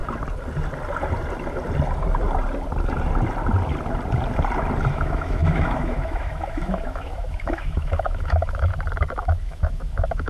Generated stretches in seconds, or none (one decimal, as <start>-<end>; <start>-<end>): 4.9-8.7; 9.2-10.3